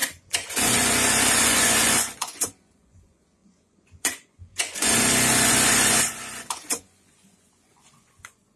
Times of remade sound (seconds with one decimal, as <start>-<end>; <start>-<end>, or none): 0.0-8.6